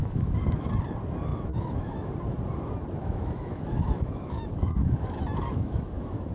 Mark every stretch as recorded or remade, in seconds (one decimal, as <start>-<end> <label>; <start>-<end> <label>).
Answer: 0.0-0.7 remade; 0.7-1.3 recorded; 1.3-2.1 remade; 2.1-3.0 recorded; 3.0-6.3 remade